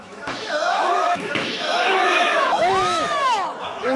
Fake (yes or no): yes